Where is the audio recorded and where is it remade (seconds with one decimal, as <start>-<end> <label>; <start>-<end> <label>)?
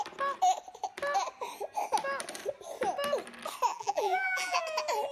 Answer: 0.0-3.7 recorded; 3.7-4.6 remade; 4.6-5.1 recorded